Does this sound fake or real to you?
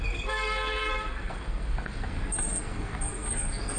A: fake